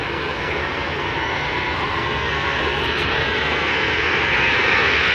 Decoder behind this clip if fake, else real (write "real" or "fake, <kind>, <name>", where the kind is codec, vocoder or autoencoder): fake, codec, SNAC